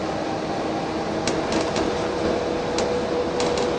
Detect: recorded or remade recorded